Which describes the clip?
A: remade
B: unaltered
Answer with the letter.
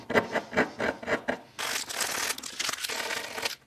B